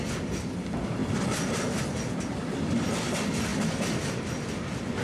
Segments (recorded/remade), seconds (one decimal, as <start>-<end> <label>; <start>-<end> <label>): 0.0-5.0 recorded